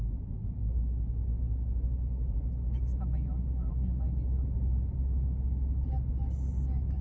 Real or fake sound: real